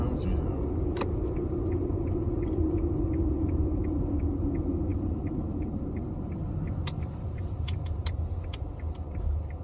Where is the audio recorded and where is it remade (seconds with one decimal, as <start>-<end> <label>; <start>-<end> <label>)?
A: 0.0-4.9 recorded; 4.9-5.9 remade; 5.9-9.6 recorded